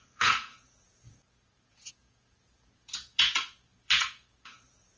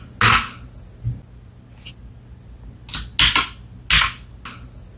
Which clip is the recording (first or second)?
second